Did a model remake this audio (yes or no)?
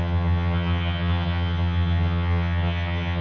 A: yes